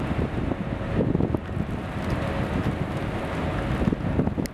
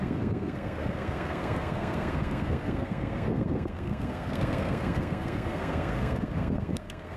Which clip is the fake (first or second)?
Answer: second